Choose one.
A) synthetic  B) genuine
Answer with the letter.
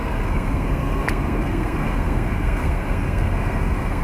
A